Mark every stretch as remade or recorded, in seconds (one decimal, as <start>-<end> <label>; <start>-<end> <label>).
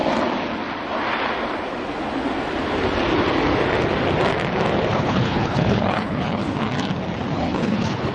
0.0-4.9 recorded; 4.9-6.4 remade; 6.4-7.3 recorded; 7.3-8.1 remade